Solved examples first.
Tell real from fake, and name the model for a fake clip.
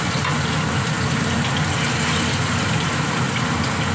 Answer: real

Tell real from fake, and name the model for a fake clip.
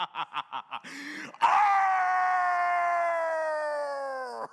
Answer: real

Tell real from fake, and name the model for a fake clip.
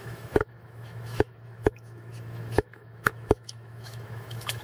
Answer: fake, autoencoder, DAC-VAE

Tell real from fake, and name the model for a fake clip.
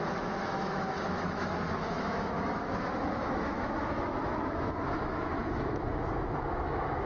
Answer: fake, autoencoder, DAC-VAE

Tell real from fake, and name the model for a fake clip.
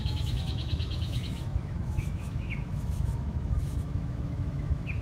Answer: fake, autoencoder, DAC-VAE